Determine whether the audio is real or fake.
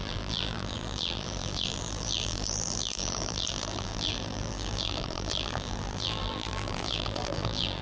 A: fake